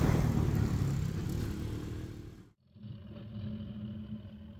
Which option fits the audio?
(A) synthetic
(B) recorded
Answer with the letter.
B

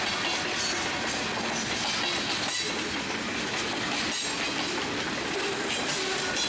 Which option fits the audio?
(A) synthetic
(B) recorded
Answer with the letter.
B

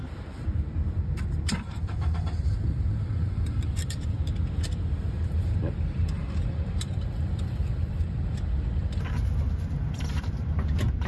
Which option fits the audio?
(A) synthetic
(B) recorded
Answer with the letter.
A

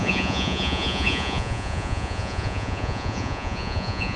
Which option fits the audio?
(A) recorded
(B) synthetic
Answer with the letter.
B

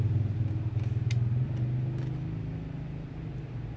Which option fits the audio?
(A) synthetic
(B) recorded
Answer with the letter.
B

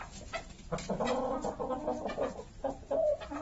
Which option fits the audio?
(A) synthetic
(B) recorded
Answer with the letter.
B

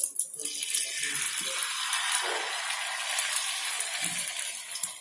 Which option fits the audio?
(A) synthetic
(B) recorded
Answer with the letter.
B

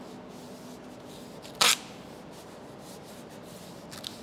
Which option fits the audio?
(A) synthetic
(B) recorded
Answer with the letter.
B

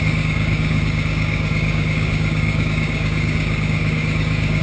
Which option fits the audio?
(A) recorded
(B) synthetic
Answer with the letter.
B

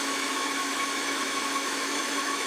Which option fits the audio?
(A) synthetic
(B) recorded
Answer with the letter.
A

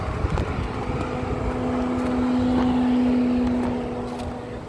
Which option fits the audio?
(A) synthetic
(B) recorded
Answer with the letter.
B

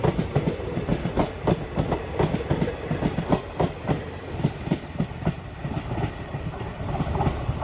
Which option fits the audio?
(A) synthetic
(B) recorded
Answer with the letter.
B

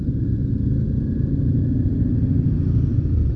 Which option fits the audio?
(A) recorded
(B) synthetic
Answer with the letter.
A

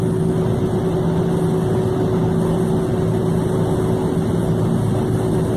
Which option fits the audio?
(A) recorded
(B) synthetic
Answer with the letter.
A